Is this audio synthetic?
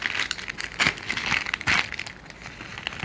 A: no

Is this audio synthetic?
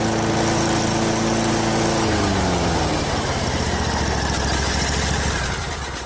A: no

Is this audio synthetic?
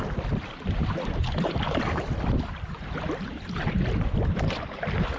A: no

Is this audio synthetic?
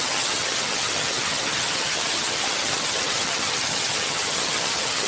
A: yes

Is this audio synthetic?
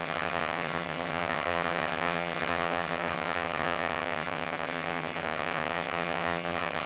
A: yes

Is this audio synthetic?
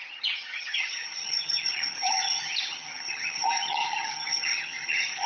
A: yes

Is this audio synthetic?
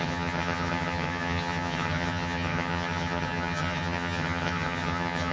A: yes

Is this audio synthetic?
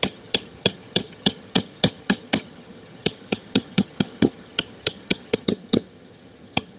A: yes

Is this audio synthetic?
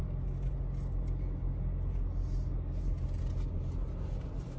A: no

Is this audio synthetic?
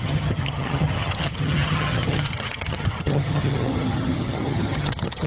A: yes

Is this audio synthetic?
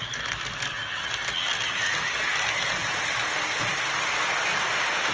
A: no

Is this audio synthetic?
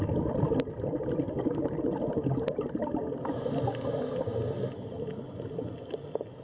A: no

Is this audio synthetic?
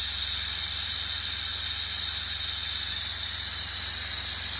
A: no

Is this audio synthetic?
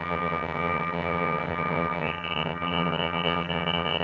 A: yes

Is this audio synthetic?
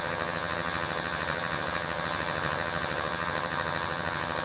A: yes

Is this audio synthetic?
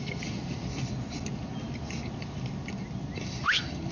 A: no